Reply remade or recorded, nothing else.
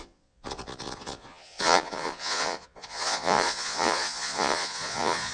remade